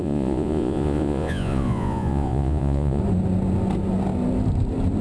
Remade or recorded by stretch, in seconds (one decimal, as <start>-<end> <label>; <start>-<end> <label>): 0.0-3.0 remade; 3.0-5.0 recorded